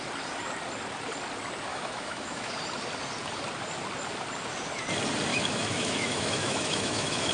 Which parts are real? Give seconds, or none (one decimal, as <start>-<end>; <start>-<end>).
0.0-1.7; 2.5-5.3